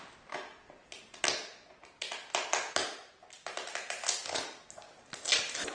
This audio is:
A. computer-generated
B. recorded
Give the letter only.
B